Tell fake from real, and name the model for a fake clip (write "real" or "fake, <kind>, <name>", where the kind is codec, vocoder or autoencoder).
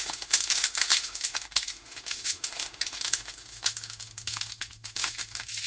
fake, autoencoder, DAC-VAE